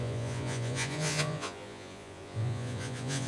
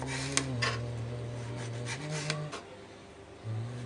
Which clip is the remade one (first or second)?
first